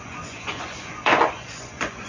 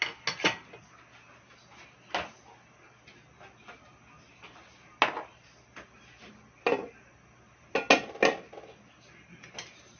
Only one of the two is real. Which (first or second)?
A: second